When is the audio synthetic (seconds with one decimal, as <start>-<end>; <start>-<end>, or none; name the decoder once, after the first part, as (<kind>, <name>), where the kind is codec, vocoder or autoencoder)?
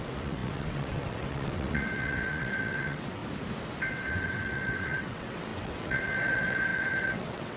0.0-3.2 (vocoder, WaveNeXt); 3.9-7.6